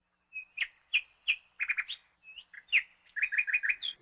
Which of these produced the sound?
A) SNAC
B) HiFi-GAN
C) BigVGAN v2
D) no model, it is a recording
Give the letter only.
D